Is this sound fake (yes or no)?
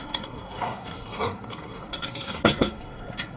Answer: yes